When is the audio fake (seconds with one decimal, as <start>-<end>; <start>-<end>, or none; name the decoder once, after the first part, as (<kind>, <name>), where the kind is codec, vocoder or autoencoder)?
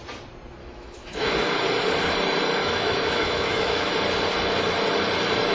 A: 0.6-1.3 (autoencoder, DAC-VAE); 2.6-3.9